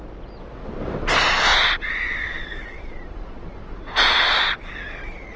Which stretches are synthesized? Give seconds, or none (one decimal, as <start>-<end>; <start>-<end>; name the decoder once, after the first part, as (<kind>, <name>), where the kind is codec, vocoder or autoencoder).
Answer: 1.5-4.7 (vocoder, Vocos)